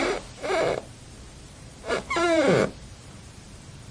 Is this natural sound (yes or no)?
no